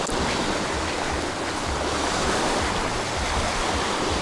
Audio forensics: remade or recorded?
recorded